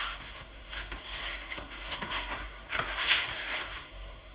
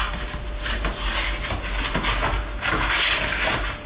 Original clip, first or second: second